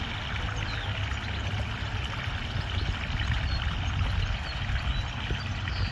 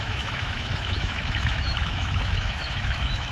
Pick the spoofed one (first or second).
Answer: second